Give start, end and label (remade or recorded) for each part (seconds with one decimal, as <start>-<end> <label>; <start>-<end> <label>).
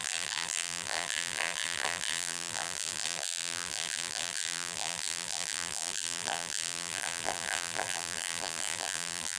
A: 0.0-9.4 remade